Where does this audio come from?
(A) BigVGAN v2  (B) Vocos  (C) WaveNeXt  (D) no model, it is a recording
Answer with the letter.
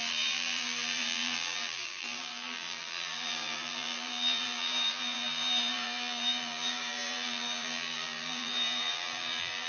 A